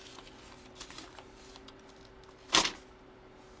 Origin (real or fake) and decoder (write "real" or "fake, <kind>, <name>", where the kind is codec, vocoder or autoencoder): real